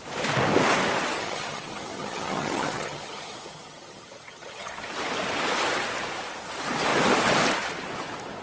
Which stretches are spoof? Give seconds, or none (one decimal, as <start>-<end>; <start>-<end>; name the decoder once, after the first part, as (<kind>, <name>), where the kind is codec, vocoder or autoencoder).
1.2-4.7 (vocoder, HiFi-GAN)

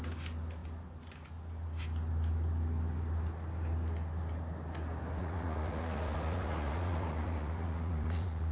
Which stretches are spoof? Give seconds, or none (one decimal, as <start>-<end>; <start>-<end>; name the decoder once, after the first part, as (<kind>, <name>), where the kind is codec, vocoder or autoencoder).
5.2-8.5 (vocoder, Vocos)

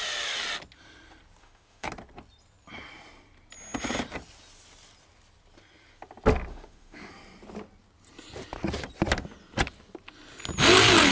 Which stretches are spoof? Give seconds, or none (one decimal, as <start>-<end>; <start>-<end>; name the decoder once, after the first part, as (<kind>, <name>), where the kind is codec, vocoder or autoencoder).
1.4-1.9 (autoencoder, DAC-VAE); 6.5-7.1

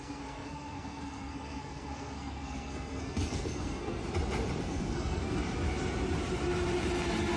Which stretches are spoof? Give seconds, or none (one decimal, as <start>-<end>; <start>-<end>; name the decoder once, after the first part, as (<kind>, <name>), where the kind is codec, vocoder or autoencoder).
0.0-4.0 (codec, SNAC); 4.6-5.4

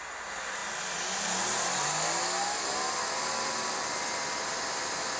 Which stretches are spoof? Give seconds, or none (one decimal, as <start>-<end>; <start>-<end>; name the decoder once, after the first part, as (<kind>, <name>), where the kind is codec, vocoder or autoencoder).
none

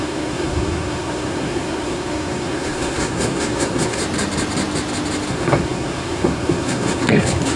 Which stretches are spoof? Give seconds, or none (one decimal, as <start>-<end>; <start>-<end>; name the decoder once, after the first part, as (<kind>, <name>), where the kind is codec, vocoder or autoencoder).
0.0-4.0 (codec, SNAC); 5.3-7.6

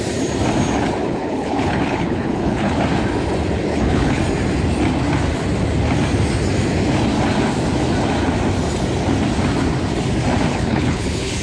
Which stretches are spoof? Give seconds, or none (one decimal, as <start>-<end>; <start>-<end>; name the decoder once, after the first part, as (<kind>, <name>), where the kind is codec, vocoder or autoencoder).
1.0-2.8 (codec, HILCodec); 3.7-4.2; 10.5-11.4